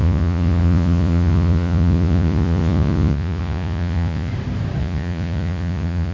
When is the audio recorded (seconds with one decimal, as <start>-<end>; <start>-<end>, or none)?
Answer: 4.3-4.8